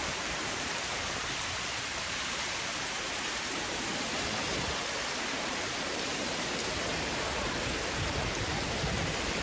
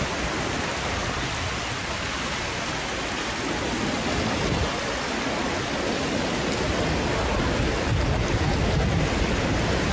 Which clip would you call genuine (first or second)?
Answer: second